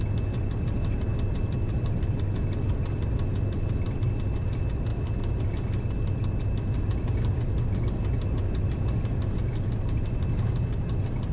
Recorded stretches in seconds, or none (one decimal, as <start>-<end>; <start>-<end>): 0.0-11.3